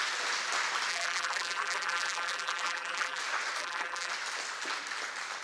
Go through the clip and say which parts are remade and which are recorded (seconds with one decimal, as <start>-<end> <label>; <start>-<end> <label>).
0.0-0.9 recorded; 0.9-3.2 remade; 3.2-3.6 recorded; 3.6-4.1 remade; 4.1-5.4 recorded